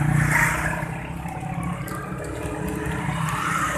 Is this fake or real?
real